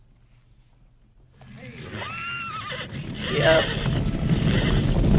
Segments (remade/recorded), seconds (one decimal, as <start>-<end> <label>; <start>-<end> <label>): 0.0-1.3 recorded; 1.3-4.4 remade; 4.4-5.2 recorded